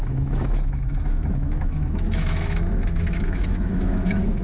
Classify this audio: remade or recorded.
remade